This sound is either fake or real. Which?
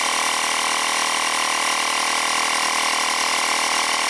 real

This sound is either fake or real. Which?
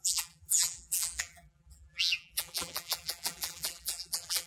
fake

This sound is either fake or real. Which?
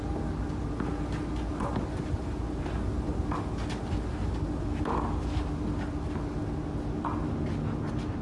real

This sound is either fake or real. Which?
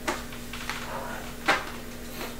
real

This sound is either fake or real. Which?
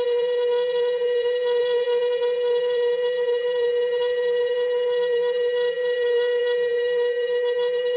fake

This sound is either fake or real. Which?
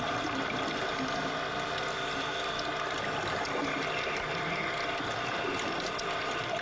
real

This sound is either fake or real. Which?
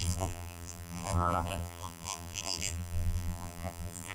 fake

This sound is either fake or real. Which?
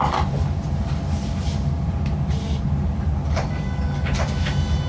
real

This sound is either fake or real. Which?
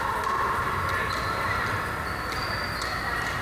real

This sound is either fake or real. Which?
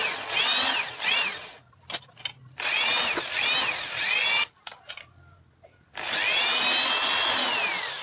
real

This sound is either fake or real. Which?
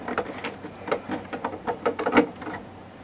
real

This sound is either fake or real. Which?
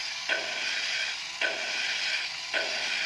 real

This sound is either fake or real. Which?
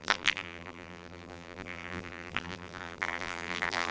fake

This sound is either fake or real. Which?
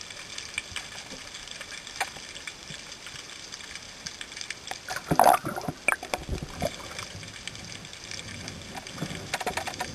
real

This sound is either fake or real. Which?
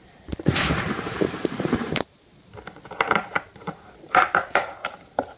fake